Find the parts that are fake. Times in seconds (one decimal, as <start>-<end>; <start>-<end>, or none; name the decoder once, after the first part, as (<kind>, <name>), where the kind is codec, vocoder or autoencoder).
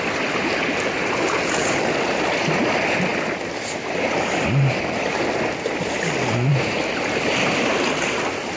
none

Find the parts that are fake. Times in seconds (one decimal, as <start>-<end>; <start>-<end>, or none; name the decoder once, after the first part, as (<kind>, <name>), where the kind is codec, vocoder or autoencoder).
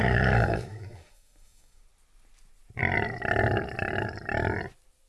0.0-1.8 (codec, DAC)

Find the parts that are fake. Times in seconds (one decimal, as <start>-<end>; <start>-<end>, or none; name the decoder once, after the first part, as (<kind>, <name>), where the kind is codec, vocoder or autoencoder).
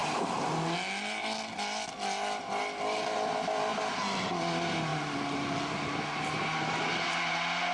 none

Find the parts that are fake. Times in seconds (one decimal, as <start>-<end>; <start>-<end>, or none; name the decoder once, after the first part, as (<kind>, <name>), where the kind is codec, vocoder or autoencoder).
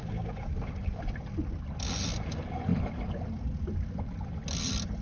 0.0-1.0 (codec, DAC)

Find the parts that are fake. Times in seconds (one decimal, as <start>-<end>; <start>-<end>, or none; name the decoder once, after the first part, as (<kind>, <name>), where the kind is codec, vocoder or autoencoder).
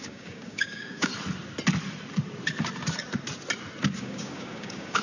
0.0-1.1 (codec, DAC); 4.0-5.0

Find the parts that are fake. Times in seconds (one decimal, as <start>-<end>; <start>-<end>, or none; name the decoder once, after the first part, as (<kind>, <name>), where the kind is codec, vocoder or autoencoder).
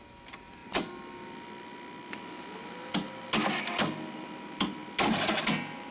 none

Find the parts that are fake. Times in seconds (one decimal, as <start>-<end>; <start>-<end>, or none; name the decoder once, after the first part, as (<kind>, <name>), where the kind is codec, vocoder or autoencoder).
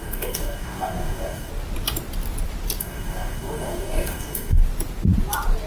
0.0-1.5 (codec, DAC); 2.8-4.6